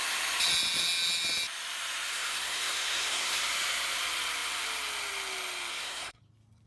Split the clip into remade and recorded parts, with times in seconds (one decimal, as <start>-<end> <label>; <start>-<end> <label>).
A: 0.0-2.1 recorded; 2.1-3.4 remade; 3.4-5.7 recorded; 5.7-6.2 remade; 6.2-6.7 recorded